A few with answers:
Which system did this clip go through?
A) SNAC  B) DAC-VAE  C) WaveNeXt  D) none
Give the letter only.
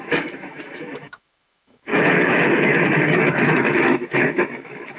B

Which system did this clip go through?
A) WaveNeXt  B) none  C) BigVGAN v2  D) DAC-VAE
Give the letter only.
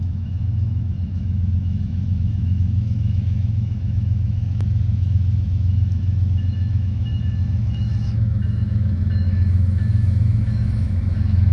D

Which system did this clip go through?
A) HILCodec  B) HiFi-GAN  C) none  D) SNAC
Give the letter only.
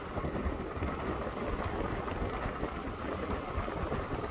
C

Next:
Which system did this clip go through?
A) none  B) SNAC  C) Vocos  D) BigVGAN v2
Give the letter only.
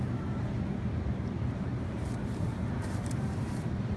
D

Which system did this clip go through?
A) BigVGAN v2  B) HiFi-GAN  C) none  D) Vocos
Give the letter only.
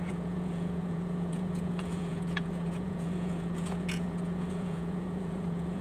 D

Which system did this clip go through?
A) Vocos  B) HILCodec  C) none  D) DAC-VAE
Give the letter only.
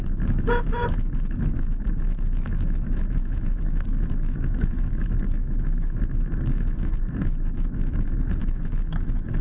D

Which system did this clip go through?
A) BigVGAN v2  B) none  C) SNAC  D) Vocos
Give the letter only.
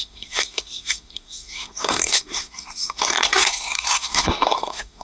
C